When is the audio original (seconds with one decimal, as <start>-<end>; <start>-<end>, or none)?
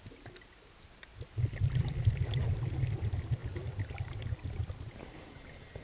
0.0-5.8